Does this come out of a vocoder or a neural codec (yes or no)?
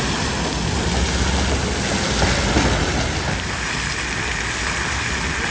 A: no